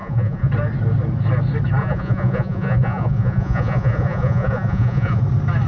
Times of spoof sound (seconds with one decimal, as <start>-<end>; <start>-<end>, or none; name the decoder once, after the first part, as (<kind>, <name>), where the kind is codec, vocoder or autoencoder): 0.0-0.5 (vocoder, Vocos); 1.8-5.2

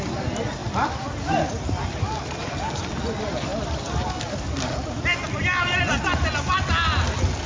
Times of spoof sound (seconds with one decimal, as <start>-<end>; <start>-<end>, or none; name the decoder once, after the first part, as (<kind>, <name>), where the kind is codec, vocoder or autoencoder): none

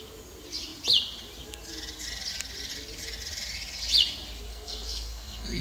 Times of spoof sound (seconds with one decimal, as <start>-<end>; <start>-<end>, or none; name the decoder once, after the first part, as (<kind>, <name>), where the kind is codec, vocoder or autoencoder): 4.5-5.6 (codec, SNAC)

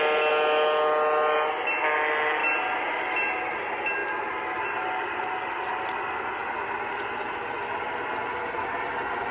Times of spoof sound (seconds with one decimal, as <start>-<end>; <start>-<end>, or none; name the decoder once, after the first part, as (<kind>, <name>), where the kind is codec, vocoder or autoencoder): none